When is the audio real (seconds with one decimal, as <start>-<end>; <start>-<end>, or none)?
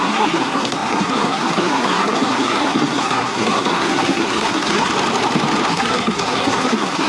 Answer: 4.9-5.7